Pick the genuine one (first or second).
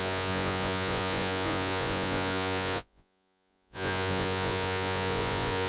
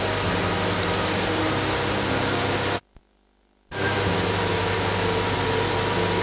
second